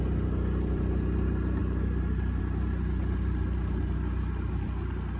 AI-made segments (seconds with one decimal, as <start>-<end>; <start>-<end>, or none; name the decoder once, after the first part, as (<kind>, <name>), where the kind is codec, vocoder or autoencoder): none